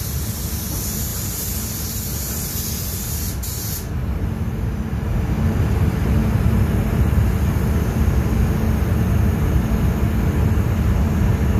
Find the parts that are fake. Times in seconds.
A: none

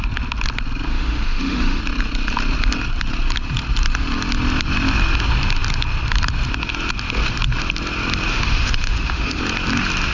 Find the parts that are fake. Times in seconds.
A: 0.9-1.8 (autoencoder, DAC-VAE); 8.3-9.4

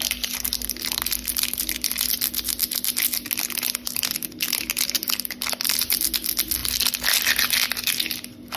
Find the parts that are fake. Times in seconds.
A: none

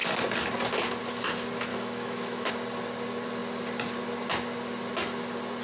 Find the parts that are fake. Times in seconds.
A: 1.7-2.5 (autoencoder, DAC-VAE)

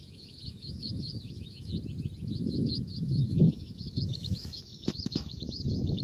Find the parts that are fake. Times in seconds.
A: 0.0-1.7 (autoencoder, DAC-VAE); 2.2-6.0

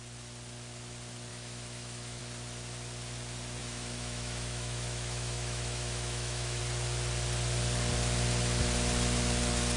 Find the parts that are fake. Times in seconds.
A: 1.3-2.2 (autoencoder, DAC-VAE); 3.6-6.6